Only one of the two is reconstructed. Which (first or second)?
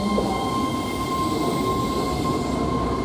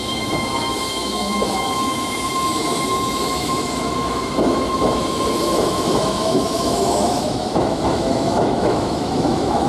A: second